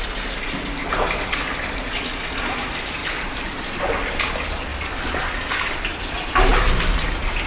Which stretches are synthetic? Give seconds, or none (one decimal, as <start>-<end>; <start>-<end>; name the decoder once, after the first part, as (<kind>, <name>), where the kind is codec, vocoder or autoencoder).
3.0-3.8 (vocoder, BigVGAN v2); 6.5-7.1

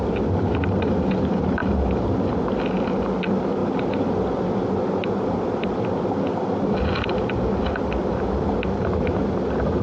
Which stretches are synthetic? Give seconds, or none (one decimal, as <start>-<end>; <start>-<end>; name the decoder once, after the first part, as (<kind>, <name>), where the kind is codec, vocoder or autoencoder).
none

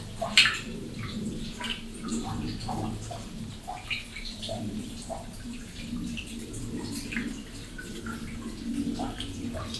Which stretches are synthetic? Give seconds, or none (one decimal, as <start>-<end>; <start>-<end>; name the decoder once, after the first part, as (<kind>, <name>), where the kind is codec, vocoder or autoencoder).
0.0-9.8 (vocoder, BigVGAN v2)

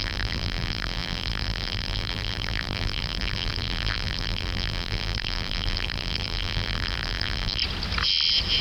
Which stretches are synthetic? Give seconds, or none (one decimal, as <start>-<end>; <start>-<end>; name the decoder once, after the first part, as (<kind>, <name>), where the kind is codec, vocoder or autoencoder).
0.0-7.6 (vocoder, BigVGAN v2)

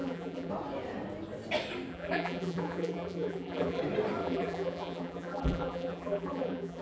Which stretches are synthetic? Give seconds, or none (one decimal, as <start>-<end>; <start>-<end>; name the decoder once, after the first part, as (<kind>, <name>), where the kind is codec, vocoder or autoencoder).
0.0-0.5 (vocoder, BigVGAN v2); 1.9-3.8; 4.2-6.8

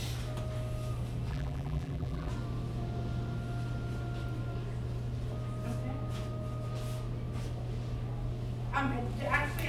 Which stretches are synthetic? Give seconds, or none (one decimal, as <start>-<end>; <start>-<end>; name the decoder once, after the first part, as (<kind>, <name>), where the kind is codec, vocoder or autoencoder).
1.3-2.3 (vocoder, BigVGAN v2)

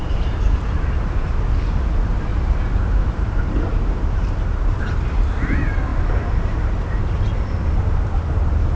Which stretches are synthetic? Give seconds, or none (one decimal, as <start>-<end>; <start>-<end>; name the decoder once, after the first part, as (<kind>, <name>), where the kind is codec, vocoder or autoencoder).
2.3-4.8 (vocoder, BigVGAN v2); 5.9-7.2

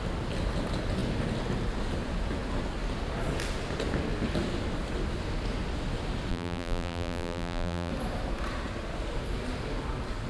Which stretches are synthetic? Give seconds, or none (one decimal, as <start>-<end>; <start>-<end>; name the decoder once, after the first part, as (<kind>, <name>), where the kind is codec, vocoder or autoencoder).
6.3-7.9 (vocoder, BigVGAN v2)